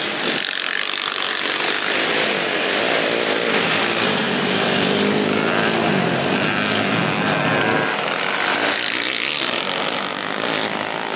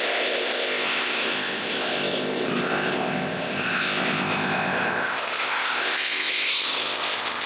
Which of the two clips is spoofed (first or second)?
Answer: second